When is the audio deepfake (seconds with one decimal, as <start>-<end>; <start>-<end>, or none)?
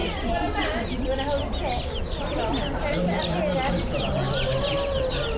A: none